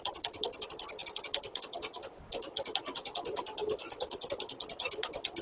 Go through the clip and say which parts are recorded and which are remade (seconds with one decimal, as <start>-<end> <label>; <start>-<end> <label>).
0.0-5.4 recorded